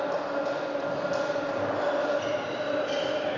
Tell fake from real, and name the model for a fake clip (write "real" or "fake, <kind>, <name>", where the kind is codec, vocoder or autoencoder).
real